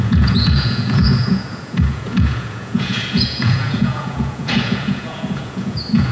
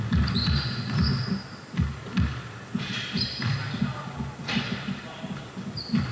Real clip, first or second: second